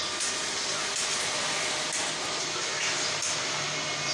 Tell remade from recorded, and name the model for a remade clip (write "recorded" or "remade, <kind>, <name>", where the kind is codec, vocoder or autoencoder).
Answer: recorded